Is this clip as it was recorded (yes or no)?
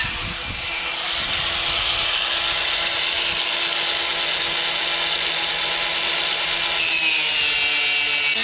yes